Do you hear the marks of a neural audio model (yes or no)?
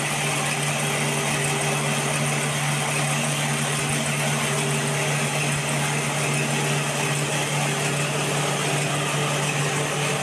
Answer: no